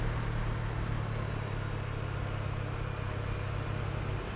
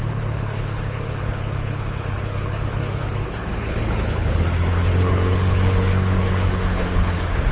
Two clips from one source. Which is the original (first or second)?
first